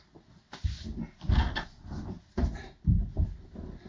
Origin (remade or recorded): recorded